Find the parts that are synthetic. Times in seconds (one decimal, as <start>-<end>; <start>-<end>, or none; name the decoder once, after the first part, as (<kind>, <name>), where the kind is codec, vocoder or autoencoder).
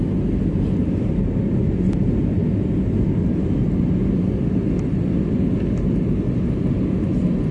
none